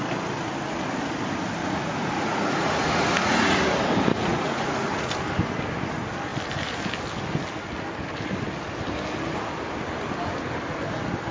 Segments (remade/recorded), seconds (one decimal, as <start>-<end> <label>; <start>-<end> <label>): 0.0-1.6 recorded; 1.6-3.6 remade; 3.6-4.1 recorded; 4.1-5.1 remade; 5.1-11.3 recorded